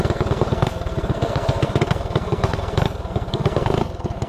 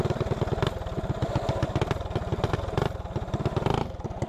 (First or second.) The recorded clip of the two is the second